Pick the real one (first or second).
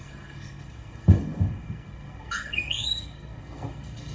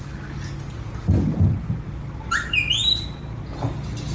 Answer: second